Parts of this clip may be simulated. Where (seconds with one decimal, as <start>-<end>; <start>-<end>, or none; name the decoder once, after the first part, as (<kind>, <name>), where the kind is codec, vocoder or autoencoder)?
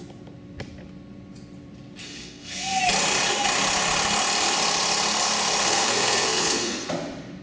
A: 2.0-2.8 (codec, SNAC); 5.6-6.9